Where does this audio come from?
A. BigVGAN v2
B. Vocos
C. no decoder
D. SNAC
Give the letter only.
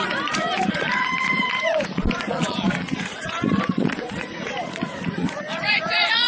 B